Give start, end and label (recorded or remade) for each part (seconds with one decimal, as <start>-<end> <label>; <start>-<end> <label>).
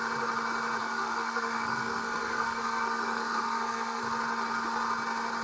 0.0-0.8 recorded; 0.8-4.0 remade; 4.0-5.4 recorded